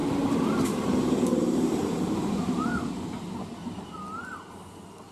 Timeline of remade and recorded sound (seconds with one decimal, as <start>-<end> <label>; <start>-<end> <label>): 0.0-3.0 remade; 3.0-5.1 recorded